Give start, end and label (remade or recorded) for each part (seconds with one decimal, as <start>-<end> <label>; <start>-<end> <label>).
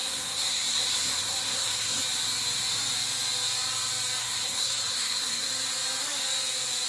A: 0.0-2.0 remade; 2.0-4.2 recorded; 4.2-5.5 remade; 5.5-6.9 recorded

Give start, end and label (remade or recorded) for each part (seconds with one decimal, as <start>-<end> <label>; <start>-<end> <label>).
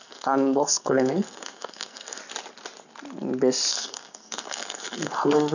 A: 0.0-2.2 remade; 2.2-3.7 recorded; 3.7-5.5 remade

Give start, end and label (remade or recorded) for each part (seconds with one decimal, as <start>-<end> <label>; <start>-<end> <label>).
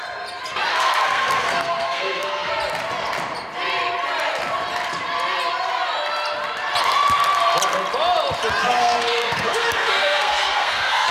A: 0.0-0.7 recorded; 0.7-2.5 remade; 2.5-8.6 recorded; 8.6-11.1 remade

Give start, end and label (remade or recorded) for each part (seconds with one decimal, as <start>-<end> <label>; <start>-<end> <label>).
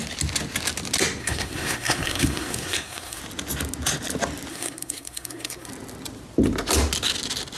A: 0.0-1.2 recorded; 1.2-3.2 remade; 3.2-4.5 recorded; 4.5-5.7 remade; 5.7-7.6 recorded